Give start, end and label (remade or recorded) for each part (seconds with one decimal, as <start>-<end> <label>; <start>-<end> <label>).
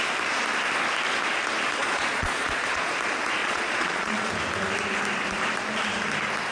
0.0-1.8 recorded; 1.8-2.9 remade; 2.9-3.4 recorded; 3.4-4.3 remade; 4.3-6.5 recorded